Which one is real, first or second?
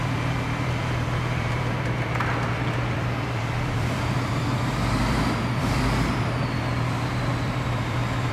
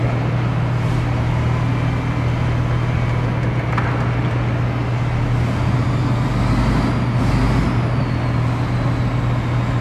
second